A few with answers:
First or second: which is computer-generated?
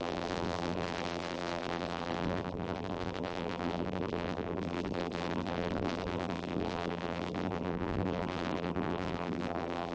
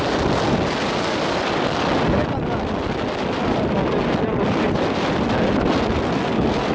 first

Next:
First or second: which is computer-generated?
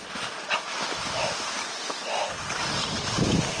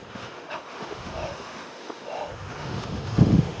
second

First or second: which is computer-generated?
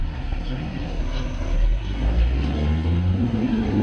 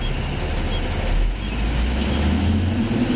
first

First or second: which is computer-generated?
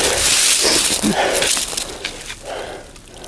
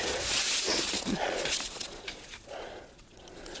second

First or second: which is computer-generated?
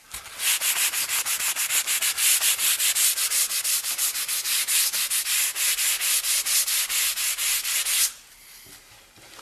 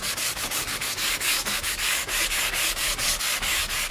second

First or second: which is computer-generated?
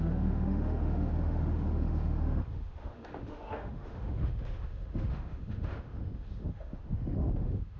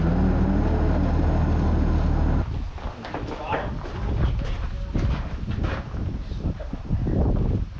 first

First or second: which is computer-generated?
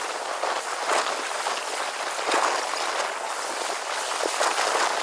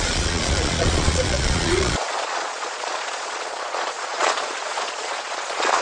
second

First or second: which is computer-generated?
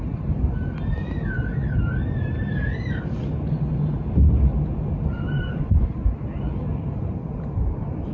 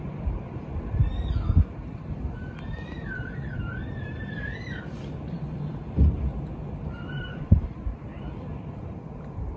second